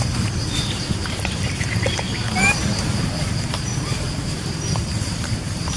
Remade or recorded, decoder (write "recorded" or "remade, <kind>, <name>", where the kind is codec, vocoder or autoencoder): remade, vocoder, BigVGAN v2